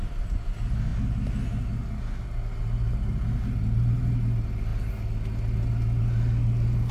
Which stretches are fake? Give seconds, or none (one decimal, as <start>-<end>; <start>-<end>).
none